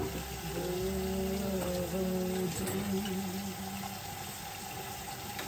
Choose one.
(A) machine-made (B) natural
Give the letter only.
B